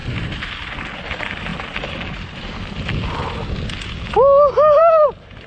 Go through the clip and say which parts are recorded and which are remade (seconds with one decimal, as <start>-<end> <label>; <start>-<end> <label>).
0.0-5.5 recorded